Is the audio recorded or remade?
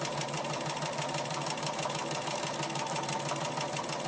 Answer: recorded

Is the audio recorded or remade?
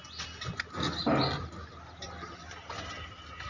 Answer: recorded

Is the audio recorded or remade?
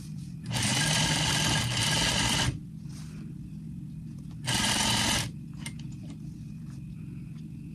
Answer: recorded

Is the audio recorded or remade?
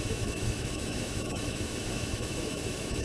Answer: remade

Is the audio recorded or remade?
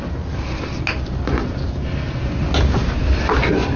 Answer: recorded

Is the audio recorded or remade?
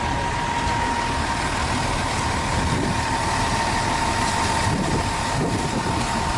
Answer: recorded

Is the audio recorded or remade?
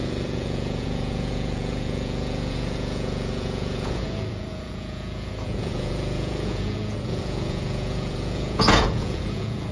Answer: remade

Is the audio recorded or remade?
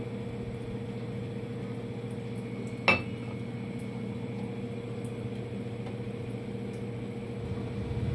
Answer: recorded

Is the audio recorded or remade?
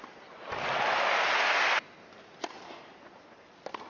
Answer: recorded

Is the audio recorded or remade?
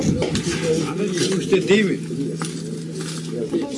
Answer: recorded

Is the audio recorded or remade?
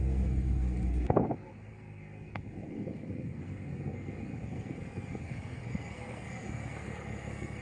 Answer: remade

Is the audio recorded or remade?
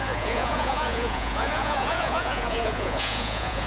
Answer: remade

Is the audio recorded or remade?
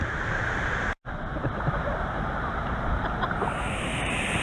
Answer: remade